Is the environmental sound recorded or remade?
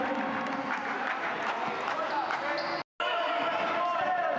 recorded